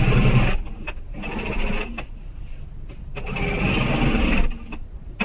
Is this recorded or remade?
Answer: recorded